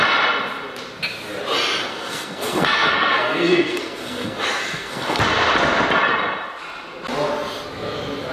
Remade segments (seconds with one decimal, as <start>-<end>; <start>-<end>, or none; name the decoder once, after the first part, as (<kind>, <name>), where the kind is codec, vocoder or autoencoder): 1.9-5.2 (codec, SNAC)

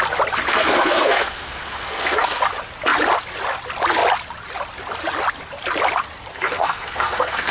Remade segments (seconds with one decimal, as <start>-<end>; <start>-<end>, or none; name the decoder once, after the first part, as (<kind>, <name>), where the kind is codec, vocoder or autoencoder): 0.5-2.4 (codec, SNAC); 6.3-7.5